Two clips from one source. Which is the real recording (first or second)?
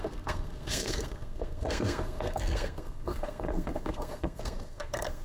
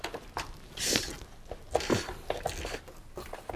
second